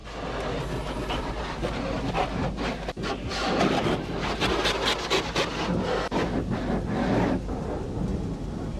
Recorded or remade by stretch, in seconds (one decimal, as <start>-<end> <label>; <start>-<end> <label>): 0.0-8.8 recorded